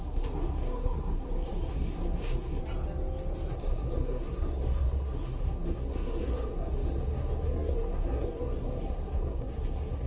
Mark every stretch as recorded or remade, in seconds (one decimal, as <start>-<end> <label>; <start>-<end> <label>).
0.0-2.6 remade; 2.6-3.5 recorded; 3.5-10.1 remade